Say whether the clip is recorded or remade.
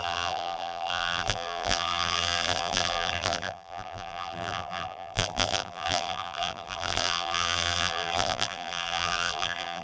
remade